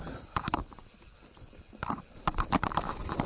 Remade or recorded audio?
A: recorded